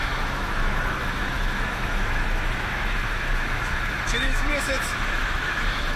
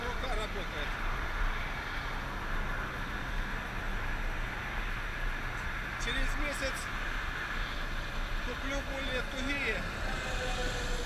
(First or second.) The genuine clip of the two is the second